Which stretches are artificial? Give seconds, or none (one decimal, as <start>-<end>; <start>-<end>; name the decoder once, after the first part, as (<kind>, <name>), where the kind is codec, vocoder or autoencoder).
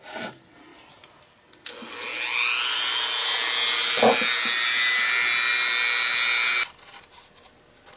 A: none